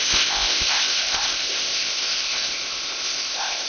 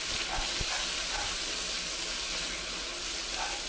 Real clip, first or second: second